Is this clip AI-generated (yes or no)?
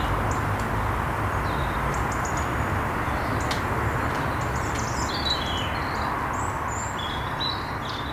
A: no